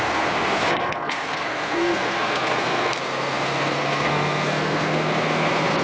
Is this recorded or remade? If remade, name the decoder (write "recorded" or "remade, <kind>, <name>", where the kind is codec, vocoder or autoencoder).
remade, codec, SNAC